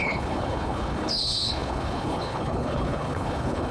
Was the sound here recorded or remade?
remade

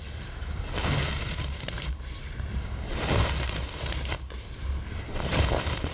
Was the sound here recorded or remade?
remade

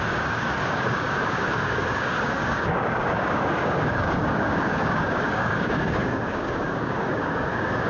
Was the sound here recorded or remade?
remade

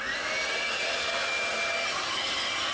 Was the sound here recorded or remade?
recorded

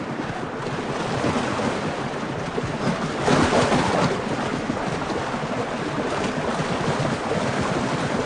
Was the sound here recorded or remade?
recorded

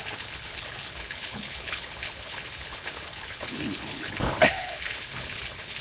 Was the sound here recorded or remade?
remade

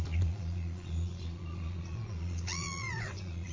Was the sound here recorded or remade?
remade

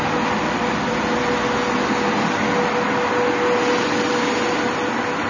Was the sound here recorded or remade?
recorded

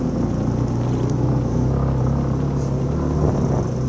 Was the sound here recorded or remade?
recorded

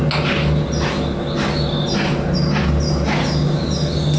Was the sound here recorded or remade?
recorded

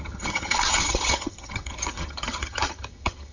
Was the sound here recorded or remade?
remade